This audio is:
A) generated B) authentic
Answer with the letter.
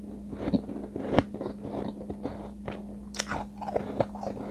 B